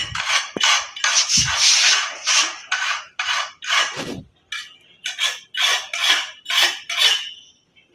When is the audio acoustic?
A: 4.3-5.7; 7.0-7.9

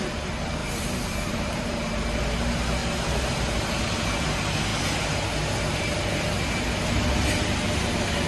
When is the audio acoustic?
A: 0.0-0.6; 1.8-2.8; 3.4-8.3

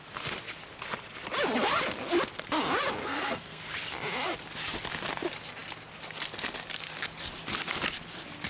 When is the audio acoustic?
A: 0.0-3.0; 3.6-8.5

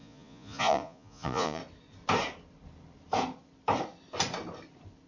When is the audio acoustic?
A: 1.6-5.1

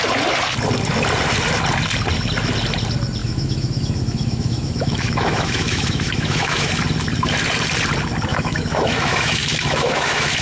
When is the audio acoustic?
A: 0.0-3.2; 6.7-8.3

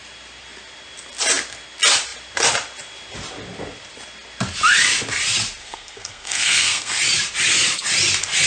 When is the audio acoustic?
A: 0.0-5.6; 7.0-8.5

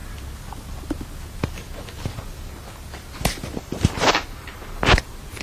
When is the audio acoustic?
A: 0.0-5.4